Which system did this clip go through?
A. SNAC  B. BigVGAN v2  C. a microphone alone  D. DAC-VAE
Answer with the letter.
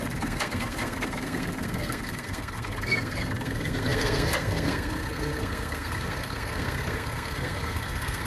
A